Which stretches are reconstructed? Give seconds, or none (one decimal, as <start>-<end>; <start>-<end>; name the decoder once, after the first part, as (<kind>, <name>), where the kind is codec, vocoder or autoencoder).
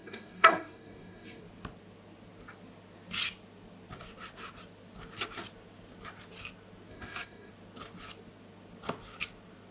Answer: 0.0-1.4 (codec, DAC); 6.9-7.5